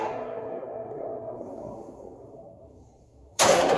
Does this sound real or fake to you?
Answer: fake